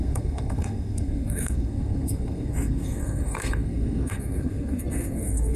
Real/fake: fake